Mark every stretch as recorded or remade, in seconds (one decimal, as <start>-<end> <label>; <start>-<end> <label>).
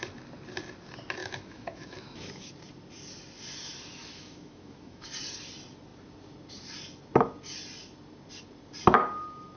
0.0-1.2 recorded; 1.2-2.5 remade; 2.5-4.0 recorded; 4.0-5.1 remade; 5.1-9.6 recorded